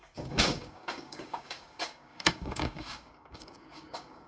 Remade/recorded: remade